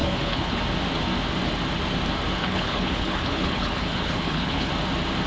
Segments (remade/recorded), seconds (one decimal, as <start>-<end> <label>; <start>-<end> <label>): 0.0-0.6 remade; 0.6-2.4 recorded; 2.4-4.7 remade; 4.7-5.3 recorded